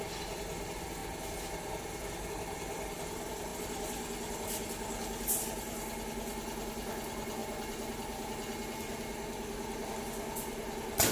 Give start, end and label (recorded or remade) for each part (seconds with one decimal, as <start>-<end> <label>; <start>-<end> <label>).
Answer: 0.0-11.1 recorded